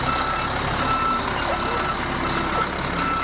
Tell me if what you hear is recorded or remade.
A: recorded